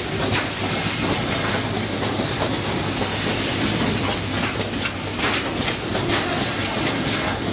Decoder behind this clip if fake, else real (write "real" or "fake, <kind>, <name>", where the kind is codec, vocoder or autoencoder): real